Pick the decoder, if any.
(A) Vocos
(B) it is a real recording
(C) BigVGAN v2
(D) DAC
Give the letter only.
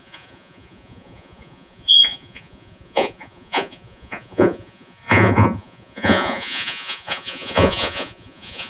A